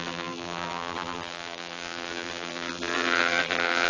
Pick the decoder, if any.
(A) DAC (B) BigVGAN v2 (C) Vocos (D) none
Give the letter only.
B